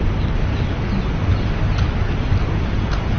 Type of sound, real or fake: real